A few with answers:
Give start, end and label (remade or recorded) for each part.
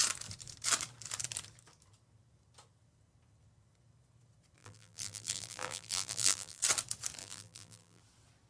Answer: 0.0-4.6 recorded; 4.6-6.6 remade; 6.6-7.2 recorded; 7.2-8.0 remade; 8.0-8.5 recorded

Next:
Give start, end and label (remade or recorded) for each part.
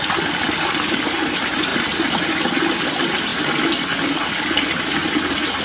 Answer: 0.0-5.6 recorded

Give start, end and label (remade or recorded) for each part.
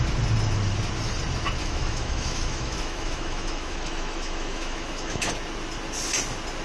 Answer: 0.0-1.6 recorded; 1.6-5.3 remade; 5.3-6.6 recorded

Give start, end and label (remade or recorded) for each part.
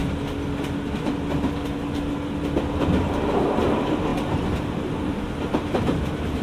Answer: 0.0-3.4 recorded; 3.4-6.4 remade